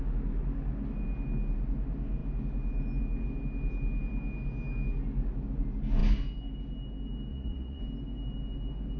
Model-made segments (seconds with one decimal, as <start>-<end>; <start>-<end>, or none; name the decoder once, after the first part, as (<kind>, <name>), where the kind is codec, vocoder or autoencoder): 7.3-7.8 (vocoder, Vocos)